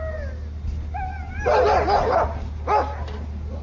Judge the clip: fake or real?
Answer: real